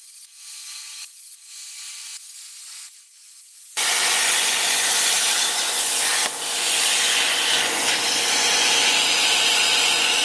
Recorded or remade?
remade